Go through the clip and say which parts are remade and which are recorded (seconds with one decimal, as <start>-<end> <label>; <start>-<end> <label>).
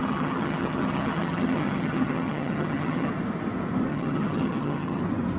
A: 0.0-3.1 remade; 3.1-3.9 recorded; 3.9-5.0 remade; 5.0-5.4 recorded